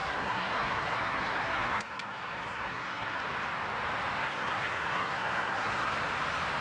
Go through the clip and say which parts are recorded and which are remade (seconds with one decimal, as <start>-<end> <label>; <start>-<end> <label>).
0.0-3.2 remade; 3.2-4.2 recorded; 4.2-5.9 remade; 5.9-6.6 recorded